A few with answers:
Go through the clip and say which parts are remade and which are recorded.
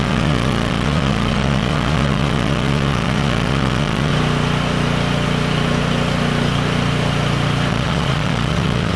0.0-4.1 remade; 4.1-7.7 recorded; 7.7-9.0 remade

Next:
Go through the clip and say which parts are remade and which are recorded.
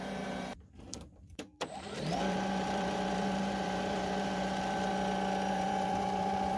0.0-4.9 remade; 4.9-5.5 recorded; 5.5-6.6 remade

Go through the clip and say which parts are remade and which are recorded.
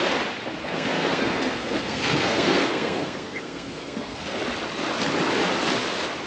0.0-0.6 recorded; 0.6-4.4 remade; 4.4-6.3 recorded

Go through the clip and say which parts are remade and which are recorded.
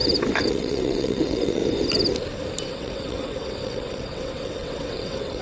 0.0-0.5 recorded; 0.5-1.6 remade; 1.6-2.7 recorded; 2.7-5.4 remade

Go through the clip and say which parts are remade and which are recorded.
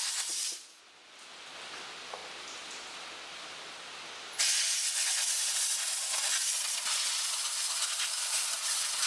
0.0-9.1 recorded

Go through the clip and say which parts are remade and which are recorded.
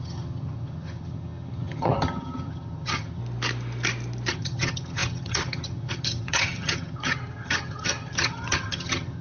0.0-3.2 remade; 3.2-4.3 recorded; 4.3-9.2 remade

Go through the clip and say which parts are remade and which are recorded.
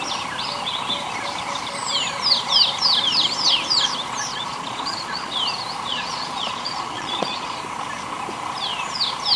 0.0-4.2 recorded; 4.2-5.3 remade; 5.3-5.9 recorded; 5.9-7.6 remade; 7.6-9.4 recorded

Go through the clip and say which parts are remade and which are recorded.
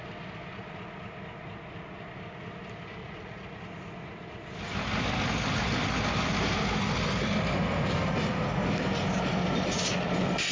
0.0-3.0 recorded; 3.0-3.6 remade; 3.6-10.5 recorded